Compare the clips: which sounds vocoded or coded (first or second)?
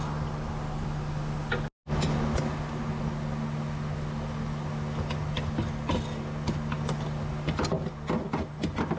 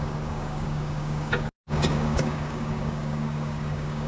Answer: second